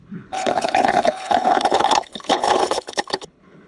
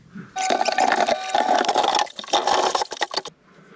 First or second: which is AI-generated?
first